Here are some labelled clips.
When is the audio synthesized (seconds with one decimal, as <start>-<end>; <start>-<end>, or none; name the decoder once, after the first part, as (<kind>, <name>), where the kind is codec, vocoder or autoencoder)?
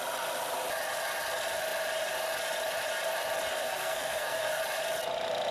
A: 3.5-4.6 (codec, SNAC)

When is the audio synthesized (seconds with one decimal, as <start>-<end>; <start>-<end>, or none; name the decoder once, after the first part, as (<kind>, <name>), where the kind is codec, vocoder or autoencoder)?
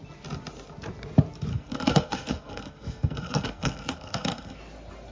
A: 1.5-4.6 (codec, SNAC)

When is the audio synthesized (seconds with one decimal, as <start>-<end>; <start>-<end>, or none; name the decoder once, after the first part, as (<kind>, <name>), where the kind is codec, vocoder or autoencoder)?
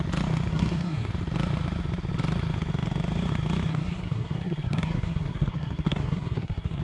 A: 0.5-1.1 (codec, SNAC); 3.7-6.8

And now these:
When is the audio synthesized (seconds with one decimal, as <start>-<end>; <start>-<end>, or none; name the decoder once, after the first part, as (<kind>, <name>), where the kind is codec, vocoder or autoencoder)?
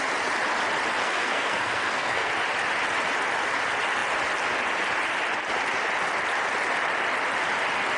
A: 1.0-2.3 (codec, SNAC)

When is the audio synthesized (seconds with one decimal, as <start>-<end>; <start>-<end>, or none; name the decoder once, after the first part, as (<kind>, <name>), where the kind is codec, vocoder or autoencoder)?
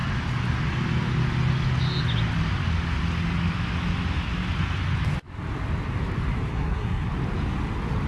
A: 6.5-7.1 (codec, SNAC)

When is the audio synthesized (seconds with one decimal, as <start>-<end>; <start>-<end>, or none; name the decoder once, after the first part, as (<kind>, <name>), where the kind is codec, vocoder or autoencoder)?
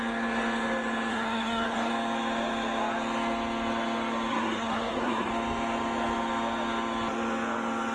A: 1.1-1.9 (codec, SNAC); 4.3-5.3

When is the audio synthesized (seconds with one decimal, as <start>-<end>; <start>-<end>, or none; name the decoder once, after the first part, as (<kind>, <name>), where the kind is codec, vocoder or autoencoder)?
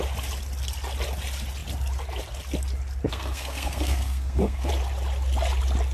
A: 3.1-4.7 (codec, SNAC)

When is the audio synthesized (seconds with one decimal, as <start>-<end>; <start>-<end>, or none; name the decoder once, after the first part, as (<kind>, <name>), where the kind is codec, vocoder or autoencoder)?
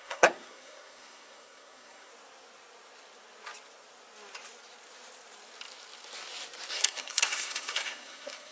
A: 0.0-2.1 (codec, SNAC); 6.7-8.5